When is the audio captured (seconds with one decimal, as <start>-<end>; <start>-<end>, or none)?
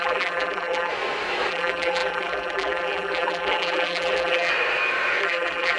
0.9-1.5; 4.5-5.2